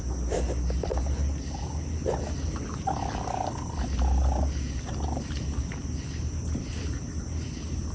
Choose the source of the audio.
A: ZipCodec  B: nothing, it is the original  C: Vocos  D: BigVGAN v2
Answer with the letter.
B